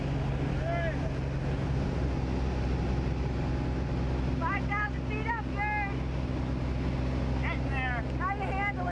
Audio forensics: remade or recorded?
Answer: recorded